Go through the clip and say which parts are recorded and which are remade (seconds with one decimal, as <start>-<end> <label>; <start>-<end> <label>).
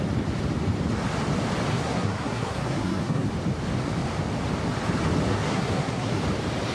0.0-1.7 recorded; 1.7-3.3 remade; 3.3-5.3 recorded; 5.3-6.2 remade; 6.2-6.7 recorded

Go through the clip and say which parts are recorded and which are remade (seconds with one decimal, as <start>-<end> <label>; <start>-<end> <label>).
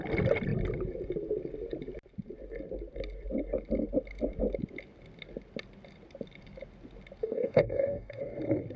0.0-7.2 recorded; 7.2-8.2 remade; 8.2-8.8 recorded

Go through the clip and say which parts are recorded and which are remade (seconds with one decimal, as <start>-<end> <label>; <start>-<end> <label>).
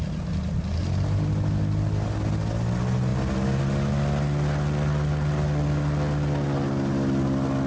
0.0-7.7 recorded